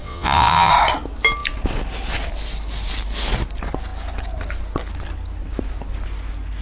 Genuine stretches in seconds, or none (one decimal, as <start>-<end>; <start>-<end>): 0.7-6.6